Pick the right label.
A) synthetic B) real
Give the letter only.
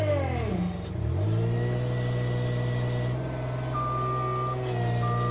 B